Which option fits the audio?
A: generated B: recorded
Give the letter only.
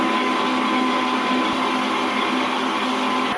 B